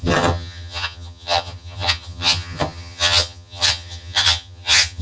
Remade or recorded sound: remade